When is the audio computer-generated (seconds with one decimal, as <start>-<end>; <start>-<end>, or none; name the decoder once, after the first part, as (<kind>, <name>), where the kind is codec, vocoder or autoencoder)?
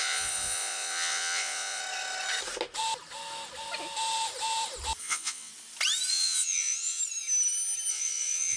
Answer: 0.0-1.8 (vocoder, Vocos); 5.0-5.5; 6.1-7.0; 7.9-8.6